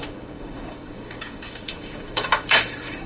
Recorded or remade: remade